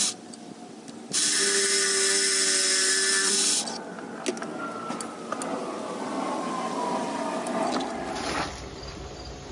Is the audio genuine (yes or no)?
yes